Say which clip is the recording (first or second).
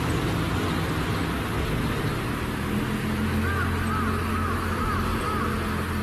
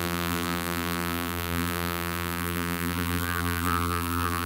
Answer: first